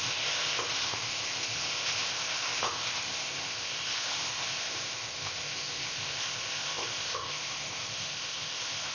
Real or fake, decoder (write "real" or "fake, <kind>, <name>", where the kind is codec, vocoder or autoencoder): fake, codec, ZipCodec